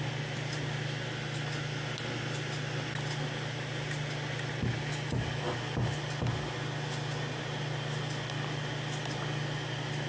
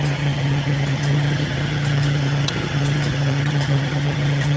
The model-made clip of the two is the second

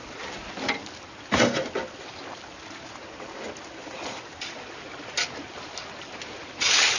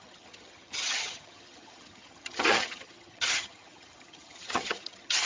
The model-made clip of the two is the second